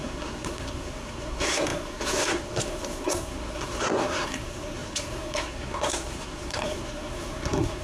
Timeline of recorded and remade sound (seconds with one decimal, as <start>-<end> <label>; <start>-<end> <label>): 0.0-7.8 remade